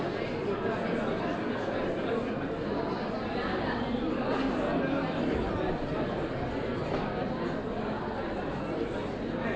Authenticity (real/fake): real